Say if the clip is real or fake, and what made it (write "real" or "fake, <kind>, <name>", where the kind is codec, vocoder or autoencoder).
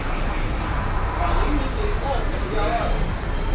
real